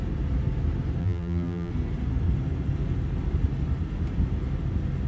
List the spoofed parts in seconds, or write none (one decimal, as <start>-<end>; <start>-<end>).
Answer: 1.0-1.7